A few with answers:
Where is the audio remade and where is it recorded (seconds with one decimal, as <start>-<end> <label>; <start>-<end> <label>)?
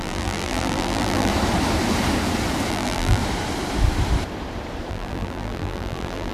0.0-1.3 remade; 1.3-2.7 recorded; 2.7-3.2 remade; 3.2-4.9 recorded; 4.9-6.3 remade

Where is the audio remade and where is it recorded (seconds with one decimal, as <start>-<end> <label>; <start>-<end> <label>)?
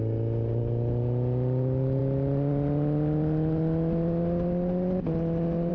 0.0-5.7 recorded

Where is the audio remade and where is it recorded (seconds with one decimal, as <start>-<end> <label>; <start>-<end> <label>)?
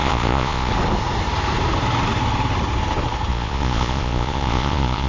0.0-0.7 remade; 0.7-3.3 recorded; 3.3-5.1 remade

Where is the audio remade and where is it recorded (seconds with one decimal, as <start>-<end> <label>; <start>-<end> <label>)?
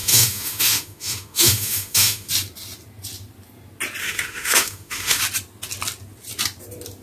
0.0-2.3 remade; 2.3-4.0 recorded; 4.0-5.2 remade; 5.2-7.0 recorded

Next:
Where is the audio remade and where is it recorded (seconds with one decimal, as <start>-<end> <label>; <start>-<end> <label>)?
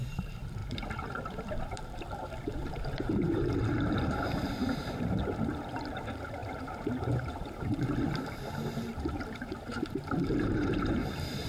0.0-11.5 remade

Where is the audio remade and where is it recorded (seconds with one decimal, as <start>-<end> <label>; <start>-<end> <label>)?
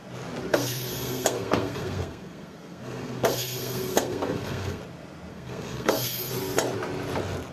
0.0-0.5 recorded; 0.5-4.8 remade; 4.8-5.3 recorded; 5.3-6.3 remade; 6.3-7.5 recorded